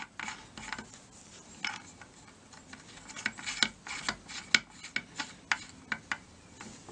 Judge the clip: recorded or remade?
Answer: recorded